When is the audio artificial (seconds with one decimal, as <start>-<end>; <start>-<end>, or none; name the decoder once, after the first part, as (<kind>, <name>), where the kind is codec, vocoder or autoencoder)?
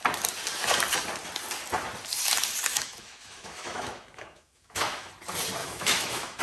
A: 2.7-5.1 (autoencoder, DAC-VAE); 5.6-6.4